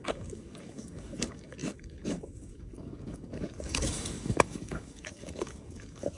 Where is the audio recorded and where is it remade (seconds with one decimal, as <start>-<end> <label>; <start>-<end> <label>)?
0.0-6.2 remade